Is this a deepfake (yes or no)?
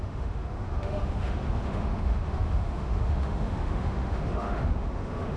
yes